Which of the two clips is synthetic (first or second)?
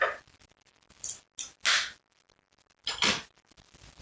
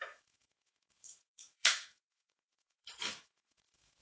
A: second